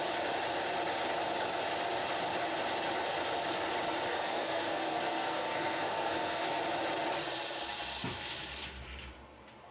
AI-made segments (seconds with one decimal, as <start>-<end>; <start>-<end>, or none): 4.1-6.6

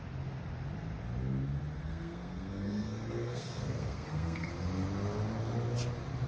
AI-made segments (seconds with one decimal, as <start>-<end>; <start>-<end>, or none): 1.8-4.5

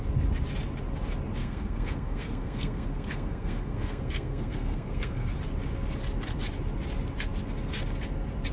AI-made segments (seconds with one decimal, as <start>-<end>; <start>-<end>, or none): 1.4-5.3

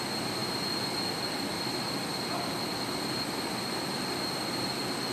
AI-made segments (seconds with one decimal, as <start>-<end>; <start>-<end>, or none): none